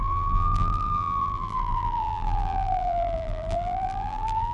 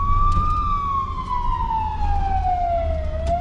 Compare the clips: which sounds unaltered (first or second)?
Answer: second